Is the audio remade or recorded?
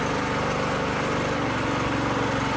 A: recorded